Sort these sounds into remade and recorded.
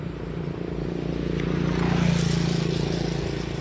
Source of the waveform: recorded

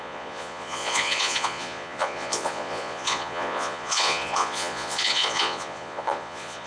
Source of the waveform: remade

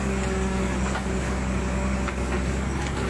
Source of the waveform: remade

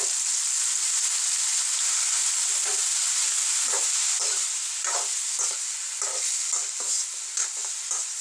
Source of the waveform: recorded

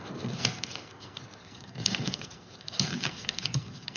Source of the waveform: remade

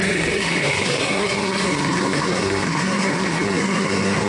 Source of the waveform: remade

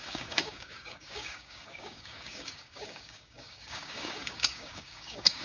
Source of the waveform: remade